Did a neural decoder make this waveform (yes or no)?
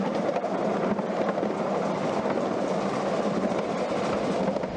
no